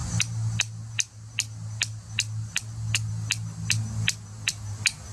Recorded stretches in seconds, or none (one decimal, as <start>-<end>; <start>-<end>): 0.0-5.1